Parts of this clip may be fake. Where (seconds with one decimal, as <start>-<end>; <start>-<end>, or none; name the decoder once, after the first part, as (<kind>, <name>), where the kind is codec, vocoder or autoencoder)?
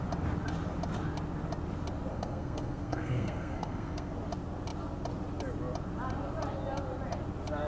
2.1-4.1 (codec, SNAC)